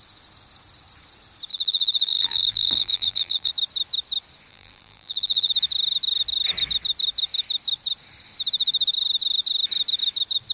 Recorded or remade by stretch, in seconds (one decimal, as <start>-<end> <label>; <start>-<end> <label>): 0.0-1.5 recorded; 1.5-3.5 remade; 3.5-4.5 recorded; 4.5-5.5 remade; 5.5-10.5 recorded